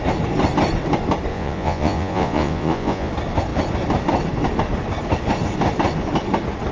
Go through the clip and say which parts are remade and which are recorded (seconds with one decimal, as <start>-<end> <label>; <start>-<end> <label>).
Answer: 0.0-1.3 recorded; 1.3-3.1 remade; 3.1-6.7 recorded